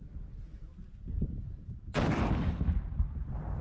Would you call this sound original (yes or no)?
yes